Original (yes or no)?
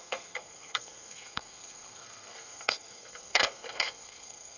no